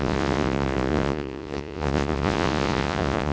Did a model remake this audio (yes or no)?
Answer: yes